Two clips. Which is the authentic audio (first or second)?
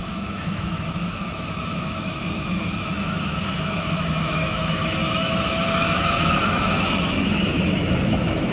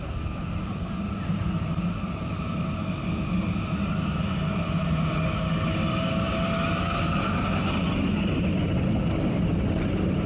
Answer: second